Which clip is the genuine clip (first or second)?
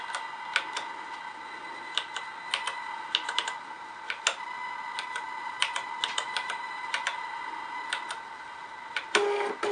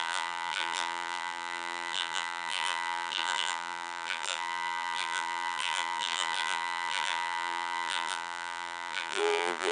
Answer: first